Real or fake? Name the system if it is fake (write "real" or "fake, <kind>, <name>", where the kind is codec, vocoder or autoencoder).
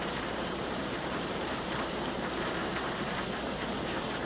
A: fake, vocoder, BigVGAN v2